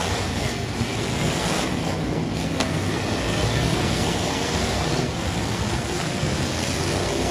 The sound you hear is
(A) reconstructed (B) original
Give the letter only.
A